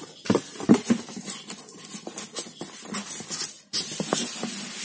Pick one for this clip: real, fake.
real